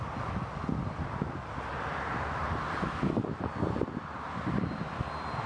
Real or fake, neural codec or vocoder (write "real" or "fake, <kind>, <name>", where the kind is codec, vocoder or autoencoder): fake, vocoder, BigVGAN v2